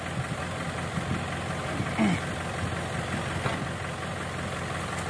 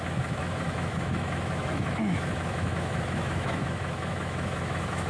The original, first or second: first